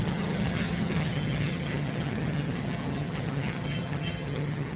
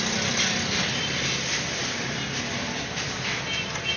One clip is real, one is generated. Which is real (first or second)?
second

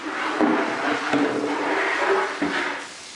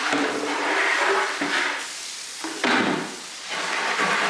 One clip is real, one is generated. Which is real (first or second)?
first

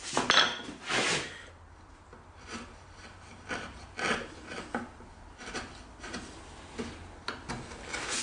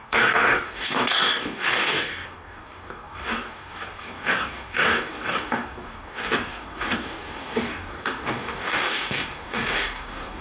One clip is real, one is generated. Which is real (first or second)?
first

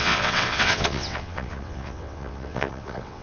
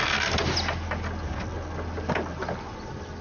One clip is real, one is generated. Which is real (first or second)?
second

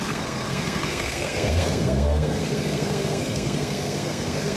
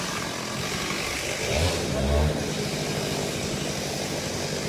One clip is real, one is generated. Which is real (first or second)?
second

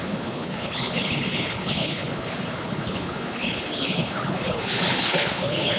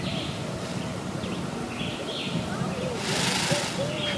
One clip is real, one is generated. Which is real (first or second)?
second